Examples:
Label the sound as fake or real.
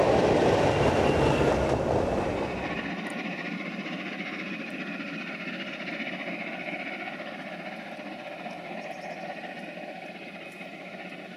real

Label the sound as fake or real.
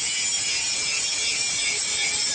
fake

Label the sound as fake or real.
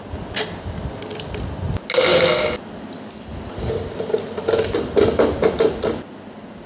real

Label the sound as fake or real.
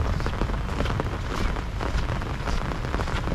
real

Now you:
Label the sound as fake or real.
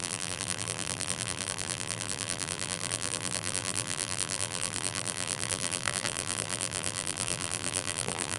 fake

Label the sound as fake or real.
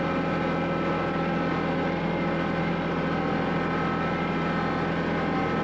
real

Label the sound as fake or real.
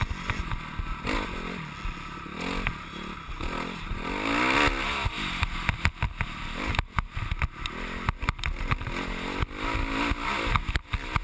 real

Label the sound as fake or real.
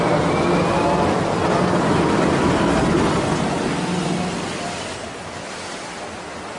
real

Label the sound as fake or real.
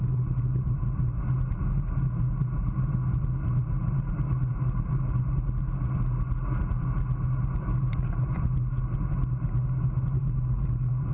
real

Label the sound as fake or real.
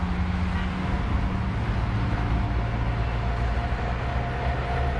real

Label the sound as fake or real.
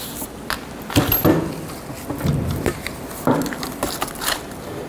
real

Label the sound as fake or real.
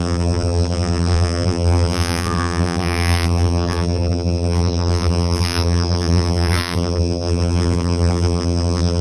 fake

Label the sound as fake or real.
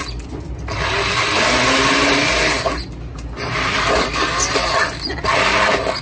real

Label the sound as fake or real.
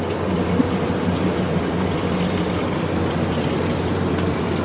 fake